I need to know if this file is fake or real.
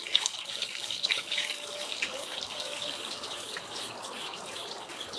fake